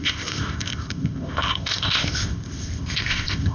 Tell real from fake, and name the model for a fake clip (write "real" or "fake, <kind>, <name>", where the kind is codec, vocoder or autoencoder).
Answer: fake, codec, ZipCodec